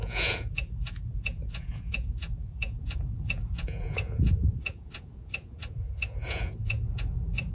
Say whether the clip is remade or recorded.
remade